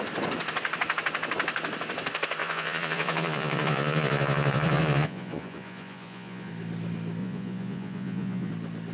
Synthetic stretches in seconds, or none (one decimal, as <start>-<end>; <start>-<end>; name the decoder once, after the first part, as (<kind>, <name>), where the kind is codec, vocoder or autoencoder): 2.4-6.5 (vocoder, Vocos); 7.2-8.5

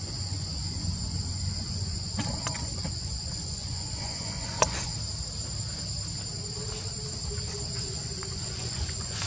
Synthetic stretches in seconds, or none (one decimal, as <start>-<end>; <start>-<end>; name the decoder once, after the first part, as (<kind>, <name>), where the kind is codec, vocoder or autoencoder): 0.0-4.9 (vocoder, Vocos); 7.5-9.3

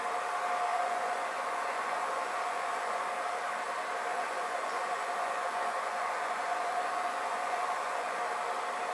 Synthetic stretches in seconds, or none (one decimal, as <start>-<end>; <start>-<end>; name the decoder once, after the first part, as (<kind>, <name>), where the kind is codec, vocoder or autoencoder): 0.7-3.1 (vocoder, Vocos); 4.1-8.2

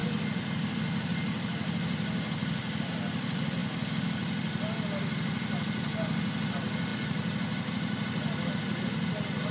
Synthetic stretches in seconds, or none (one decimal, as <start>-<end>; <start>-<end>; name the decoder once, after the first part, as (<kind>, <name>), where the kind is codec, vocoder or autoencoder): none

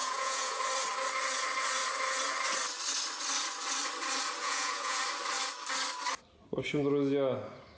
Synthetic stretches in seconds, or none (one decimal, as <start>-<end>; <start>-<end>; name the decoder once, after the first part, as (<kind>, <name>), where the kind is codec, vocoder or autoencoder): 0.0-0.6 (vocoder, Vocos); 4.4-5.0

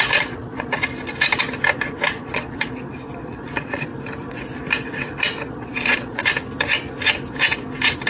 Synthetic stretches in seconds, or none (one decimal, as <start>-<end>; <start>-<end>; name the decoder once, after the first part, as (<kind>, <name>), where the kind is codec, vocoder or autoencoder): 0.0-0.8 (vocoder, Vocos); 2.1-2.7; 3.2-3.9; 5.5-6.2

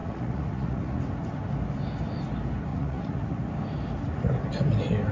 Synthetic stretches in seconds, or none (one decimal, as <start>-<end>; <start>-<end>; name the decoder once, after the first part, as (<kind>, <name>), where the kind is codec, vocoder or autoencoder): 0.0-1.0 (vocoder, Vocos); 2.7-3.5